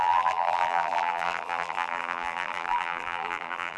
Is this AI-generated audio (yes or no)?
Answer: yes